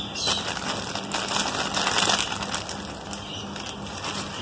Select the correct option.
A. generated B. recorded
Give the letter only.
B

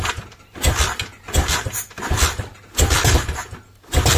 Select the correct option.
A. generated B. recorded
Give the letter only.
B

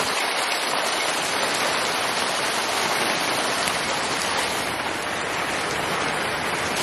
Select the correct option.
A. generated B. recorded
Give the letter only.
A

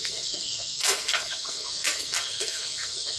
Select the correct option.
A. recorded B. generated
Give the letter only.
B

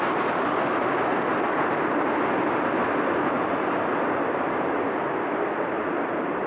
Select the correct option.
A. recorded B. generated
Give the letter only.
A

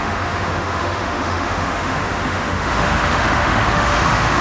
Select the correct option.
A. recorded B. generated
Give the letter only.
B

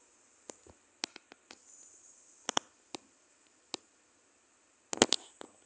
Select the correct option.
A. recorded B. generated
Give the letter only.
A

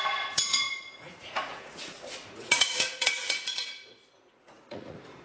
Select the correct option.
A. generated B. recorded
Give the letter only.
A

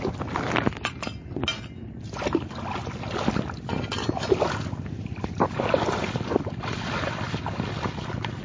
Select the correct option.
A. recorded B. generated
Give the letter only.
A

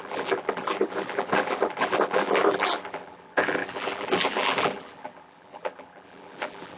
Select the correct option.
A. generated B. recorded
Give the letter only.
A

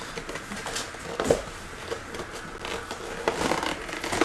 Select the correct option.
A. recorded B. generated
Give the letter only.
A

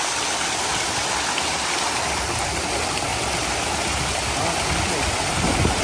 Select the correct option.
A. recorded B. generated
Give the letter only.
A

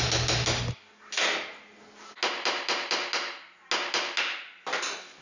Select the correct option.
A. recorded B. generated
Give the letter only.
A